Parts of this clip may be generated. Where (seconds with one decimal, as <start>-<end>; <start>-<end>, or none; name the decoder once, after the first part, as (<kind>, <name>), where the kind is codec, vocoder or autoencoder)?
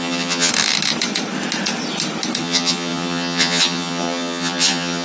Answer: 0.0-0.5 (vocoder, HiFi-GAN); 2.4-5.0